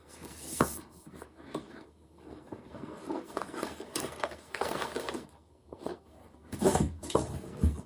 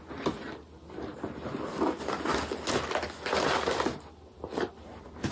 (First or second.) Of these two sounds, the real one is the second